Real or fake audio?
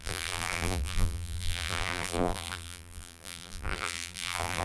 fake